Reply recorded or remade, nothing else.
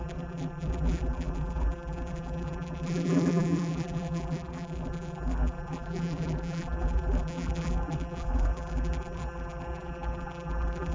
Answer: remade